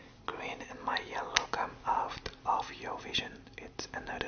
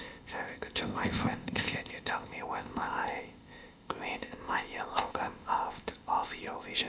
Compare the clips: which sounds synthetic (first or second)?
second